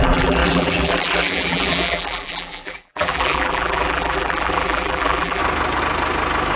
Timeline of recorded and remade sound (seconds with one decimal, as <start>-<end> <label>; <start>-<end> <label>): 0.0-5.4 remade; 5.4-6.6 recorded